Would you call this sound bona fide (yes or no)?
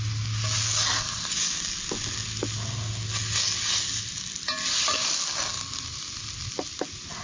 yes